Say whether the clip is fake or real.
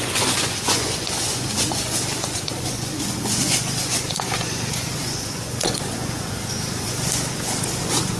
fake